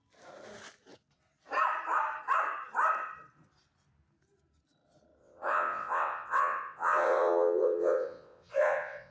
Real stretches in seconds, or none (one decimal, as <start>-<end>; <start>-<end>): 0.0-5.2